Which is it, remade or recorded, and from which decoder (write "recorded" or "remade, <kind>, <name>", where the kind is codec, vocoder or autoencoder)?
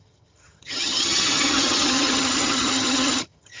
remade, vocoder, HiFi-GAN